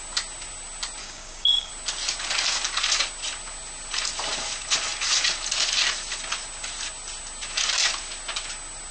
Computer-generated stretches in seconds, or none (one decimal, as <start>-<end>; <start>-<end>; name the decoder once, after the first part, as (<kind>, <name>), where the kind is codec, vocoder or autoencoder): 1.0-1.7 (codec, DAC)